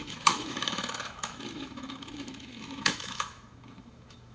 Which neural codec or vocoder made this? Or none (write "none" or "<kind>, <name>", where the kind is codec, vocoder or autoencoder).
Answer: autoencoder, DAC-VAE